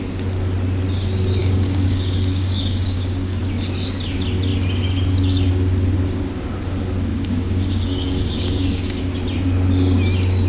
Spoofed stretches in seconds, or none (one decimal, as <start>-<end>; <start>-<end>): 1.4-3.4; 7.1-9.0